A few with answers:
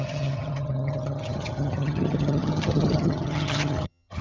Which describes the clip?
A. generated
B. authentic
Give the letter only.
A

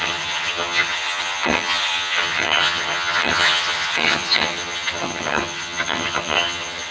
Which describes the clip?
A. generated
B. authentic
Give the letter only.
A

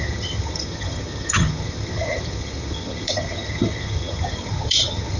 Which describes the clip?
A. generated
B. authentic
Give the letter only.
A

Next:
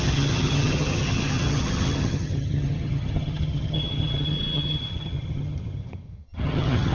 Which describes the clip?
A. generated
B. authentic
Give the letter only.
A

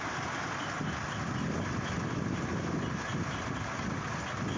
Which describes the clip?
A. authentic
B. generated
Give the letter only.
A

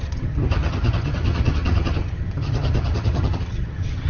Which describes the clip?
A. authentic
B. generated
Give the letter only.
B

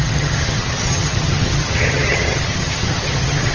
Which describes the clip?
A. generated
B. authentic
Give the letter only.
A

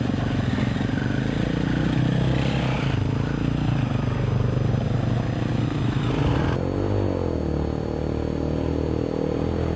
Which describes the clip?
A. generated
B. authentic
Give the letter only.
B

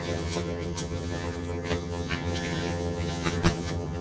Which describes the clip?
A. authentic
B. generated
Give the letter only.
B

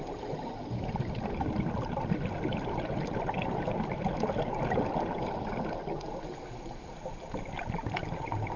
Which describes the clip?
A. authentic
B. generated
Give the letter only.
A